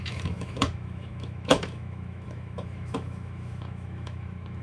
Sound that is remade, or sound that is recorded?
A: remade